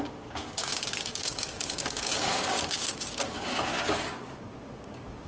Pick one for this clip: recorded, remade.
remade